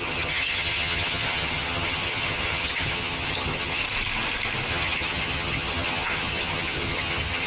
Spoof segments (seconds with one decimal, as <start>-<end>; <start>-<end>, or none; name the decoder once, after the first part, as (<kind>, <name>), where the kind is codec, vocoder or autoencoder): 0.0-3.8 (vocoder, HiFi-GAN); 4.7-7.5